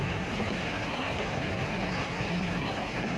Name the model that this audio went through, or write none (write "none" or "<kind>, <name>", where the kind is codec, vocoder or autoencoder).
codec, SNAC